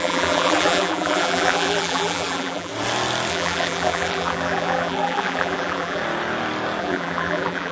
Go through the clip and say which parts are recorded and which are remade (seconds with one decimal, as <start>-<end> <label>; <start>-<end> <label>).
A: 0.0-2.7 remade; 2.7-3.3 recorded; 3.3-6.0 remade; 6.0-6.8 recorded; 6.8-7.7 remade